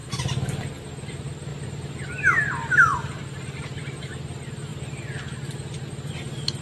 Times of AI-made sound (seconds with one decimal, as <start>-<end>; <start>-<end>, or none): 0.0-0.6; 2.9-4.2